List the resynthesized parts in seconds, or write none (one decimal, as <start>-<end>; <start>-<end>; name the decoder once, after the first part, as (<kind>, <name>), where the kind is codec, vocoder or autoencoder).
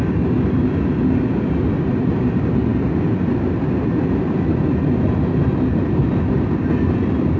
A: none